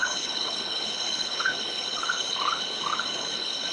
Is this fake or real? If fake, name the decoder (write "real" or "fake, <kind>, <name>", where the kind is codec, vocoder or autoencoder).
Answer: fake, codec, HILCodec